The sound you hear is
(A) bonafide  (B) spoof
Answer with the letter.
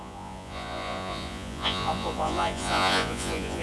B